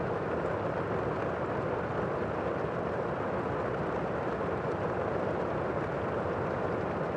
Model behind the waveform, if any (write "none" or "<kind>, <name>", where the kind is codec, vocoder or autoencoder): none